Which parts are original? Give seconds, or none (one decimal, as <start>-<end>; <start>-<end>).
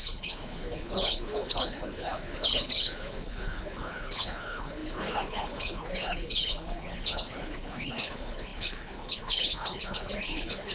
none